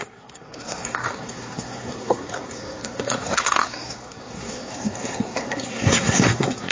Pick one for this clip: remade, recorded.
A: remade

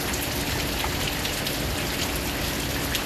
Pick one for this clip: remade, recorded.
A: recorded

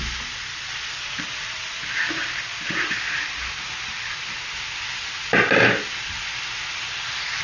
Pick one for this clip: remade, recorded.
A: recorded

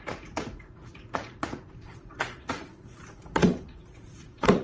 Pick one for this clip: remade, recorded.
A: remade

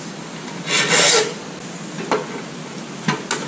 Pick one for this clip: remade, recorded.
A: recorded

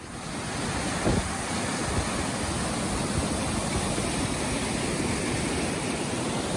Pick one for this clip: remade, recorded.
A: recorded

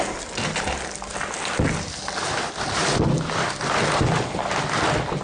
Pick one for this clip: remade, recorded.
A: recorded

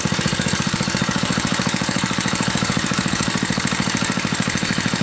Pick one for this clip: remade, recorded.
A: remade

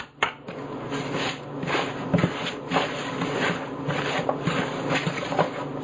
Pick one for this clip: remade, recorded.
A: recorded